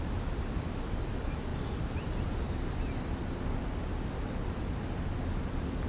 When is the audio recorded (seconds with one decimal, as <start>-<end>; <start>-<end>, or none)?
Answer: 0.0-5.9